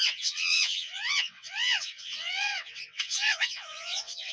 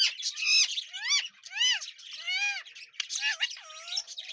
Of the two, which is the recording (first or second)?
second